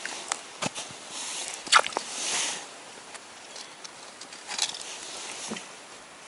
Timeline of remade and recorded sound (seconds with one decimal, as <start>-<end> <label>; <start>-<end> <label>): 0.0-1.4 recorded; 1.4-5.1 remade; 5.1-6.3 recorded